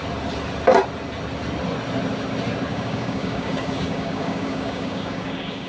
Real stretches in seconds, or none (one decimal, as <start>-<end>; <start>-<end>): 0.0-2.7